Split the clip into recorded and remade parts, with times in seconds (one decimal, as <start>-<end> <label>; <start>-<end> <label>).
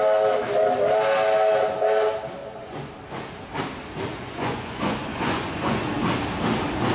0.0-2.4 recorded; 2.4-2.9 remade; 2.9-4.1 recorded; 4.1-5.8 remade; 5.8-6.9 recorded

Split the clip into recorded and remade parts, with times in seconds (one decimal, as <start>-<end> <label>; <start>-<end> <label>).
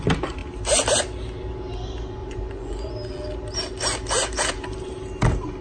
0.0-2.2 recorded; 2.2-2.9 remade; 2.9-5.6 recorded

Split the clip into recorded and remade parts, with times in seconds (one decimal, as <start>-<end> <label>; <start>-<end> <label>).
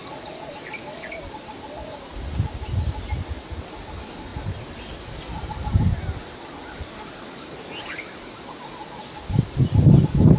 0.0-0.5 remade; 0.5-10.4 recorded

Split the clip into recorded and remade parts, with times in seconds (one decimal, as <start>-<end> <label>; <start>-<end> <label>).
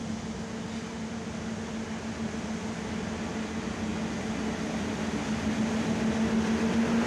0.0-7.1 recorded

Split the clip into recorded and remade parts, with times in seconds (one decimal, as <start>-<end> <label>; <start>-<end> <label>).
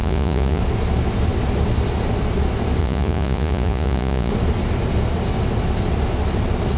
0.0-0.6 remade; 0.6-2.8 recorded; 2.8-4.3 remade; 4.3-6.8 recorded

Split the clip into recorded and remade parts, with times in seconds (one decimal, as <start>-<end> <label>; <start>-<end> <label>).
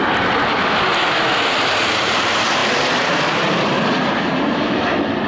0.0-5.3 recorded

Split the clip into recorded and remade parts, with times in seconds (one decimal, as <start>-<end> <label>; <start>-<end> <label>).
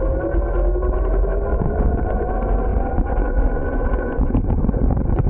0.0-1.5 recorded; 1.5-2.3 remade; 2.3-2.7 recorded; 2.7-5.3 remade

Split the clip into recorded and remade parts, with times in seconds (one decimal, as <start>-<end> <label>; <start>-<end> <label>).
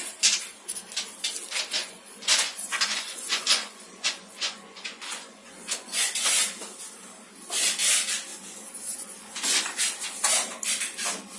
0.0-1.8 recorded; 1.8-6.1 remade; 6.1-8.3 recorded; 8.3-9.8 remade; 9.8-11.4 recorded